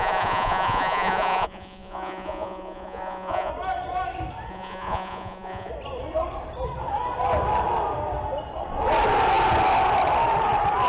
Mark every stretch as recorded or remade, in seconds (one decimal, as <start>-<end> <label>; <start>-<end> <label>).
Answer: 0.0-3.5 remade; 3.5-4.5 recorded; 4.5-5.7 remade; 5.7-10.9 recorded